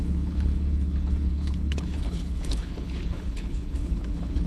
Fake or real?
fake